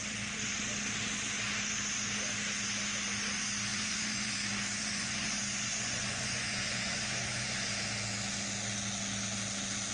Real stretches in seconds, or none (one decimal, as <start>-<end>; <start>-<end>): 0.0-3.7; 4.3-4.8; 7.7-9.9